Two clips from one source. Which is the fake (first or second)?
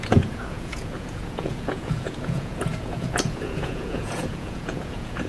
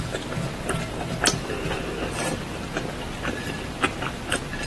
first